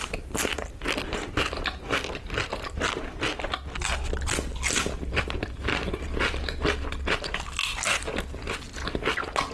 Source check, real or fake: real